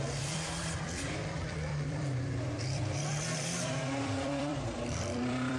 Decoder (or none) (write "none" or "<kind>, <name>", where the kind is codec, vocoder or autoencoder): vocoder, BigVGAN v2